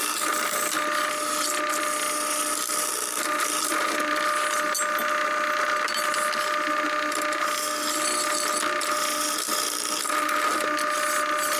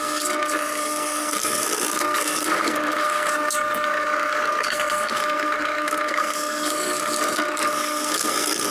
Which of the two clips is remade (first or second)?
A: second